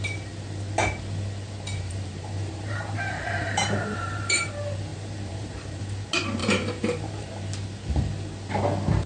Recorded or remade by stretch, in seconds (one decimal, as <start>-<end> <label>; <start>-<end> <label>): 0.0-1.7 recorded; 1.7-4.5 remade; 4.5-4.9 recorded; 4.9-5.8 remade; 5.8-6.4 recorded; 6.4-7.3 remade; 7.3-9.1 recorded